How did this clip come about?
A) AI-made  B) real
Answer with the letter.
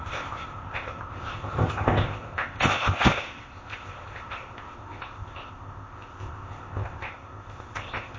A